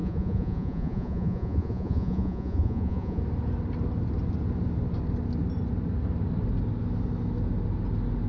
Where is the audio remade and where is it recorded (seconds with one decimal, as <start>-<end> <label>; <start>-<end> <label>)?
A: 0.0-3.2 remade; 3.2-8.3 recorded